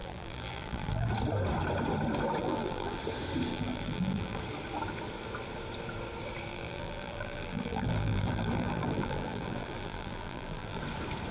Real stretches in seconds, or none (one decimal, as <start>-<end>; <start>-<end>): 1.1-2.4; 3.0-3.5; 4.4-6.5; 10.8-11.3